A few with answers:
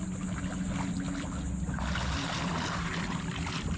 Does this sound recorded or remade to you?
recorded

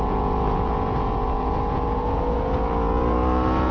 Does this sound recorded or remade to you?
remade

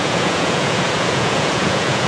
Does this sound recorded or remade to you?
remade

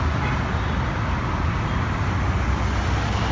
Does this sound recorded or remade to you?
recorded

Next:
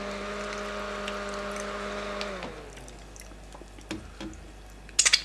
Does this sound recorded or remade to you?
recorded